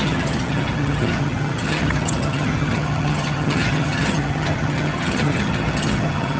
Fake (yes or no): yes